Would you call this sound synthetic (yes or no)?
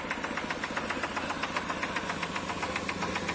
no